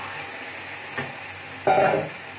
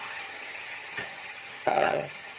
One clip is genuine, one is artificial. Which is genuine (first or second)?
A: first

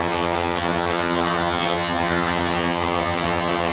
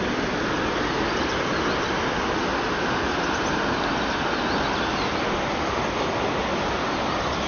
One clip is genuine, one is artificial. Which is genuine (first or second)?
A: second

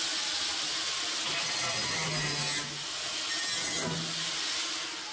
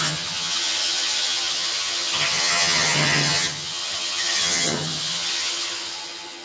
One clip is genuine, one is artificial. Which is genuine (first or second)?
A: first